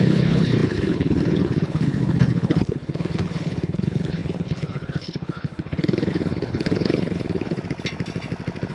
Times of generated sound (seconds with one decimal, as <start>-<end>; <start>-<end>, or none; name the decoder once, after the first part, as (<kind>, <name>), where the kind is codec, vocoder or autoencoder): 0.0-7.6 (codec, HILCodec)